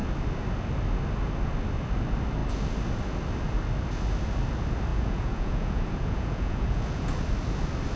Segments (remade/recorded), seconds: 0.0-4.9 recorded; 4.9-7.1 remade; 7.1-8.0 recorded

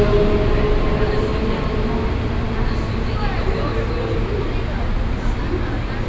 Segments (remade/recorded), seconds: 0.0-6.1 recorded

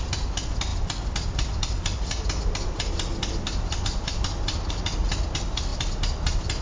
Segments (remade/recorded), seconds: 0.0-0.7 recorded; 0.7-4.7 remade; 4.7-6.6 recorded

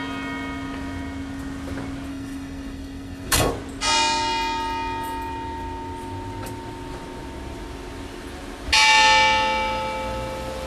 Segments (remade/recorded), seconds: 0.0-2.1 recorded; 2.1-3.5 remade; 3.5-10.7 recorded

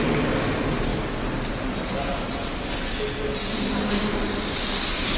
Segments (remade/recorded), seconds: 0.0-5.2 recorded

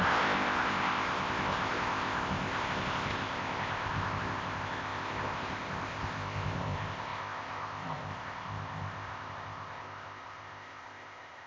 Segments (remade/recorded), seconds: 0.0-11.5 remade

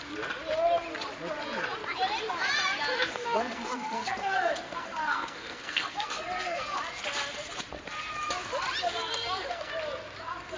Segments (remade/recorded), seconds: 0.0-2.9 recorded; 2.9-6.8 remade; 6.8-9.0 recorded; 9.0-9.7 remade; 9.7-10.6 recorded

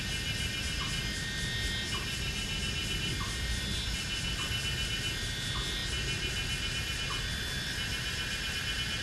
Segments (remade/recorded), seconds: 0.0-9.0 recorded